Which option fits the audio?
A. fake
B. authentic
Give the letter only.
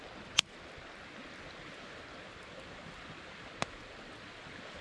B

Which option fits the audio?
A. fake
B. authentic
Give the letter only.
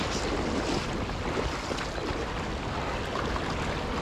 B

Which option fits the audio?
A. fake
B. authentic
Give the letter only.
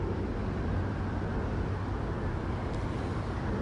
B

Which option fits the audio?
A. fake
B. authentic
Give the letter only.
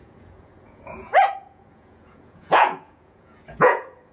A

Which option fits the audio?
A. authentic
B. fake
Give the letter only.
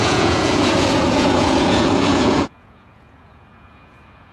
B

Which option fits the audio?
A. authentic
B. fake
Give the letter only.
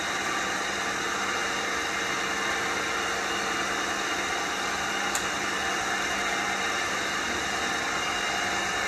A